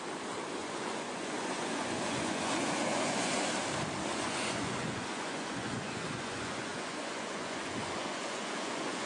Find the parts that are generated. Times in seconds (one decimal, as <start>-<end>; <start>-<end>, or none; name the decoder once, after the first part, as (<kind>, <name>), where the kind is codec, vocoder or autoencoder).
0.6-3.5 (vocoder, Vocos); 4.1-9.1